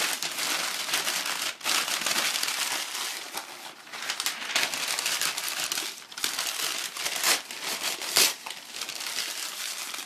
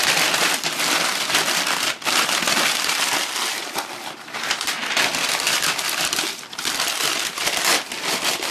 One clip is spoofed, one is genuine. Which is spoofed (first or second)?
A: second